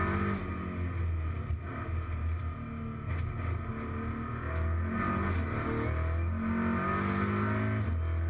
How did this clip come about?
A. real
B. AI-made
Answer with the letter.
A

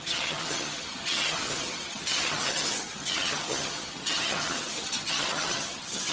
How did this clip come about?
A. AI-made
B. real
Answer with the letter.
A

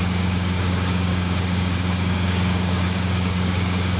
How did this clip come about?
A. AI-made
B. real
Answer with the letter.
A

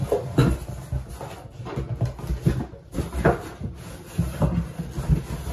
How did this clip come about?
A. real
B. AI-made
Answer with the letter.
A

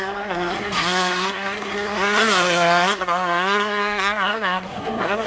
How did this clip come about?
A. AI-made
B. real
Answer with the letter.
A